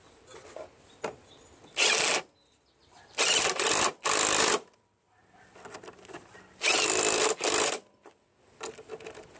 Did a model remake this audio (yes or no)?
no